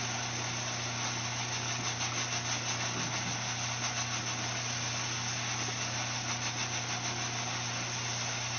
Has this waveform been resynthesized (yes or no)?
no